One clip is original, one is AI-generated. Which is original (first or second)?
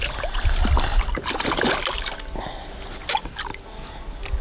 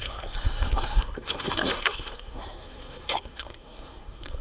first